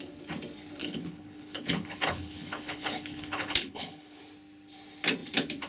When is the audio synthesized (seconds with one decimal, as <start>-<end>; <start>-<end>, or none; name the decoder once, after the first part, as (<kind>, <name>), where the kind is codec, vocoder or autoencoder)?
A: 0.8-4.2 (codec, HILCodec)